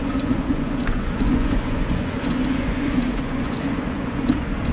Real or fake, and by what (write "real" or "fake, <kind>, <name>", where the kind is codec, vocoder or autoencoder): fake, vocoder, Vocos